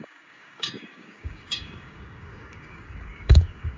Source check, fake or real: fake